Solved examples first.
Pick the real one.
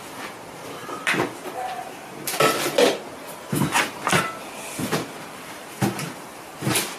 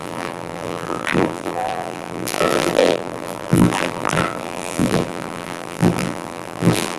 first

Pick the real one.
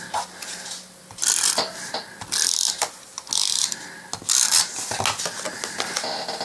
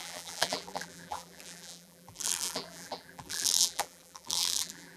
first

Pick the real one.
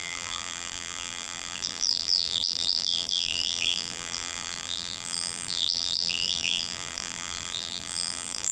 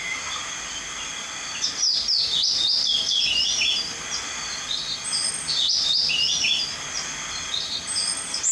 second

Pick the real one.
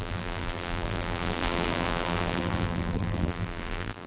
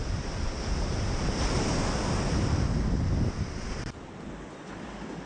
second